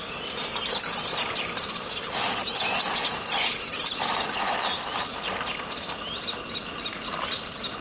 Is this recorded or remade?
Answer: recorded